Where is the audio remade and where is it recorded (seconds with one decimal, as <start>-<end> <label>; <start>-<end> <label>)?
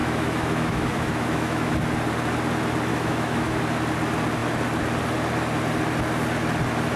0.0-1.7 remade; 1.7-2.9 recorded; 2.9-3.6 remade; 3.6-7.0 recorded